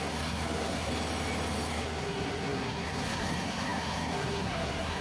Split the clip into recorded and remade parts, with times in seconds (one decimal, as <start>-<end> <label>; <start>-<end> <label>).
0.0-0.9 remade; 0.9-1.7 recorded; 1.7-5.0 remade